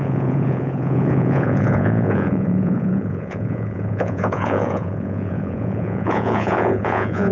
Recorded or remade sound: remade